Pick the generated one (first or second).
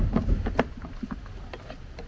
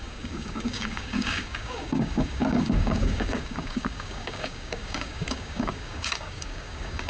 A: second